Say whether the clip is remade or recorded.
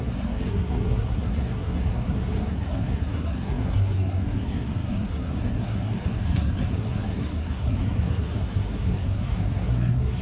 remade